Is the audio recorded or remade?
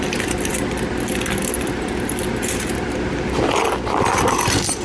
recorded